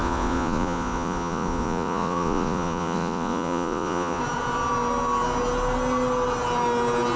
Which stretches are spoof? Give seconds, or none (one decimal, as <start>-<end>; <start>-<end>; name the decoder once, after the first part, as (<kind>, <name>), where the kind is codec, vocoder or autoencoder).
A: 0.0-4.2 (vocoder, Vocos)